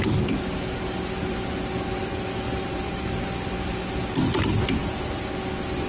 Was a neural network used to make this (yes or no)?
no